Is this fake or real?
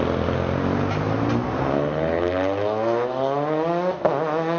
real